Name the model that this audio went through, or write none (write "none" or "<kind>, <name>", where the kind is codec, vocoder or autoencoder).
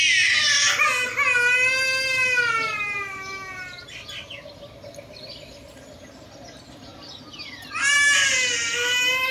none